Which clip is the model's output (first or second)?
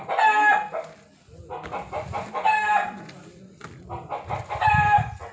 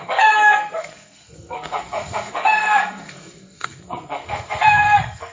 second